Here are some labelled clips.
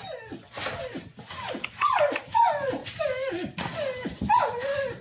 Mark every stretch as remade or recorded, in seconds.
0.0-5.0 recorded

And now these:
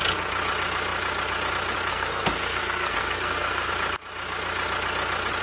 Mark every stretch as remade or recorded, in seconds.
0.0-1.9 recorded; 1.9-3.7 remade; 3.7-5.4 recorded

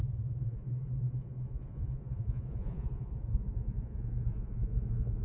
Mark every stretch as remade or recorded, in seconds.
0.0-5.2 remade

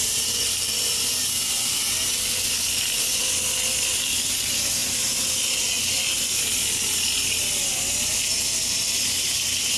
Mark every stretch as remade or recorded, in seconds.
0.0-9.8 recorded